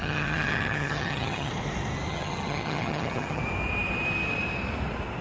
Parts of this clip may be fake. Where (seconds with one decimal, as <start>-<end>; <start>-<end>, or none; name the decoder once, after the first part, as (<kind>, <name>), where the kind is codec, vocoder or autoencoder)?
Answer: 0.0-1.5 (vocoder, HiFi-GAN); 2.1-3.4